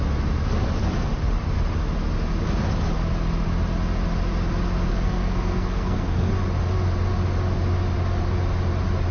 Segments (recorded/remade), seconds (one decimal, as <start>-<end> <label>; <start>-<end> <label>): 0.0-4.9 recorded; 4.9-6.3 remade; 6.3-9.1 recorded